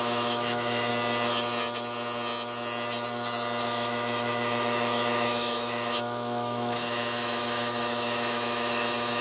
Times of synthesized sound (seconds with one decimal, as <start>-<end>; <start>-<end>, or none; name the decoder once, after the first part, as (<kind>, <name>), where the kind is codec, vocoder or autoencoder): 0.0-0.9 (autoencoder, DAC-VAE); 3.6-9.2